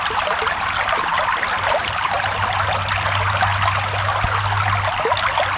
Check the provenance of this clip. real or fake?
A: real